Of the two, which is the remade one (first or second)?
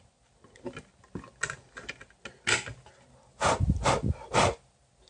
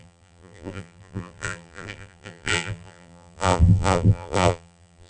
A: second